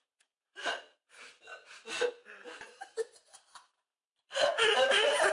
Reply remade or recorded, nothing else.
recorded